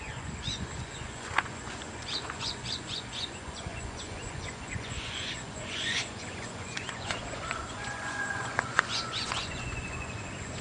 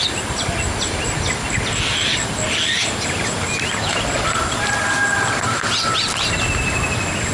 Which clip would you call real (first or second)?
second